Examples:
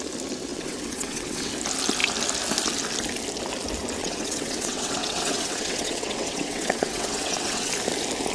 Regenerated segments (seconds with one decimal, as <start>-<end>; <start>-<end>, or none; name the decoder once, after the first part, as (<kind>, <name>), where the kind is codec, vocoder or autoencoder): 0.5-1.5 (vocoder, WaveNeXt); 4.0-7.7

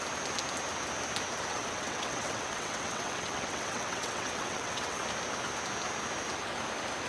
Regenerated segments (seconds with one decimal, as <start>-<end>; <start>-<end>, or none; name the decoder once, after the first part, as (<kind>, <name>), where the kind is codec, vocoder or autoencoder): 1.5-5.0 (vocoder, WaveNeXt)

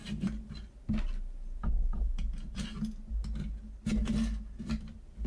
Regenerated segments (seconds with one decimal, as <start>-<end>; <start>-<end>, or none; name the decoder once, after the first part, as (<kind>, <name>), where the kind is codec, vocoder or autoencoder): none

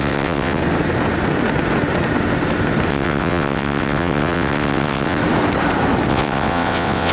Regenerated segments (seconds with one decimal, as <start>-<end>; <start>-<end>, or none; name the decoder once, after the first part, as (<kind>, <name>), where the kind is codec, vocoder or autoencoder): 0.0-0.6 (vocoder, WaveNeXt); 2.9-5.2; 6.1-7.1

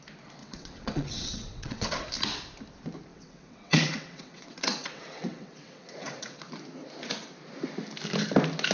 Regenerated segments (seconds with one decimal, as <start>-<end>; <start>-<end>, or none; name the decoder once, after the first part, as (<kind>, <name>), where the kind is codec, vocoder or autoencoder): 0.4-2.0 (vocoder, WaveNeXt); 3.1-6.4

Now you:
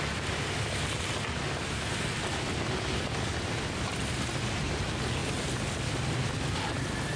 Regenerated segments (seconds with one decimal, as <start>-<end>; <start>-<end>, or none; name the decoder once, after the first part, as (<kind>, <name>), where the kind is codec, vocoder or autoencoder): none